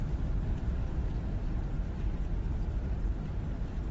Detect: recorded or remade remade